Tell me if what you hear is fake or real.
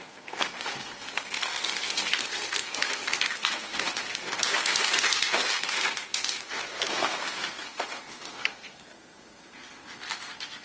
fake